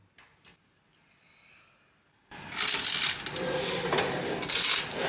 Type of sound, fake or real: real